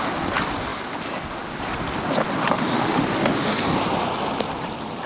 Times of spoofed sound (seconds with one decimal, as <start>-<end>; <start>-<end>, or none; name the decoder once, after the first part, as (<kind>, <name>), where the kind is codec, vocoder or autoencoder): 2.7-3.5 (autoencoder, DAC-VAE)

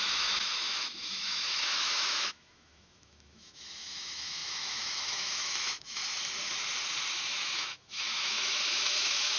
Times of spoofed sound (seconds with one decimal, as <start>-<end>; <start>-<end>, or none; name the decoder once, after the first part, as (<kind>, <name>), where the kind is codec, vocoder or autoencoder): 0.0-6.0 (autoencoder, DAC-VAE); 7.2-9.4

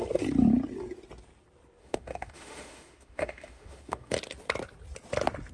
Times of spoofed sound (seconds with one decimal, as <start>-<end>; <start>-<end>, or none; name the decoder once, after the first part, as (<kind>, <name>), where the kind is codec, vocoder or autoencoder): 1.8-4.1 (autoencoder, DAC-VAE)

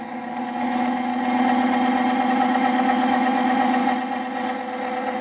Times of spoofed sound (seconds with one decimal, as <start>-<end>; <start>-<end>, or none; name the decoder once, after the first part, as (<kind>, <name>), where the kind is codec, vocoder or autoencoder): 0.0-1.1 (autoencoder, DAC-VAE); 2.3-3.8

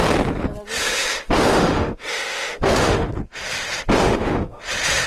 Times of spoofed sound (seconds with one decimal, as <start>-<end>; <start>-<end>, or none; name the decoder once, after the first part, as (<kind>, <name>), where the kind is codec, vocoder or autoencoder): 0.8-3.1 (autoencoder, DAC-VAE); 4.0-4.6